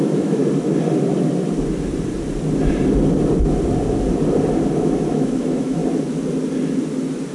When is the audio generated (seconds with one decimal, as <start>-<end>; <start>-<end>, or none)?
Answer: 0.0-0.4; 4.8-5.8